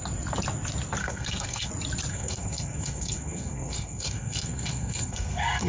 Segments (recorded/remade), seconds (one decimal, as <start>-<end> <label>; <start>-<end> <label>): 0.0-1.0 recorded; 1.0-1.7 remade; 1.7-2.1 recorded; 2.1-5.7 remade